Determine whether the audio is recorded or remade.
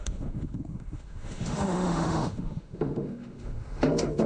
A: remade